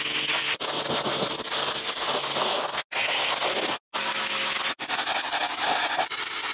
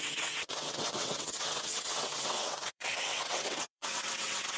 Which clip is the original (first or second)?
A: first